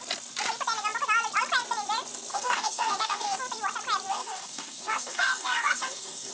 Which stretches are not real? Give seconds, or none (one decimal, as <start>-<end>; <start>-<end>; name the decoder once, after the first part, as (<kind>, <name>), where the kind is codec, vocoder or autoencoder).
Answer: 2.3-3.4 (codec, DAC); 4.1-6.3